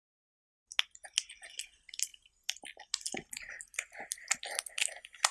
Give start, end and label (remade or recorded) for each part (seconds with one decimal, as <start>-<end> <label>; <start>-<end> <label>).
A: 0.0-5.3 recorded

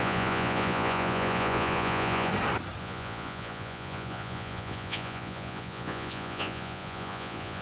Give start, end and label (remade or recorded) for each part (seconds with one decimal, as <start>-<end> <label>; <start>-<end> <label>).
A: 0.0-2.3 remade; 2.3-2.8 recorded; 2.8-7.6 remade

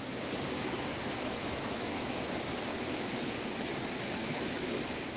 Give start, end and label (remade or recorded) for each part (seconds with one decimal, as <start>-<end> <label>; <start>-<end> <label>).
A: 0.0-1.0 recorded; 1.0-2.3 remade; 2.3-2.7 recorded; 2.7-3.3 remade; 3.3-4.2 recorded; 4.2-4.7 remade; 4.7-5.2 recorded